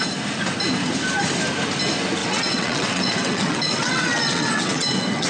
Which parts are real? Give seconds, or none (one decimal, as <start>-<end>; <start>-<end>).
0.0-2.2